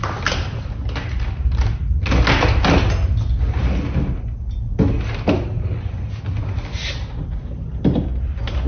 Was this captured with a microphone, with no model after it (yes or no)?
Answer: yes